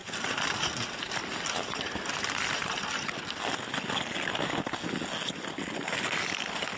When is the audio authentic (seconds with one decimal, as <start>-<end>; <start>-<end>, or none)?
0.0-6.8